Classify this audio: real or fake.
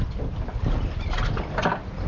real